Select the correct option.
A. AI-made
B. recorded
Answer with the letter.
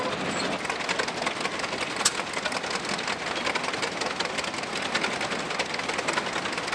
B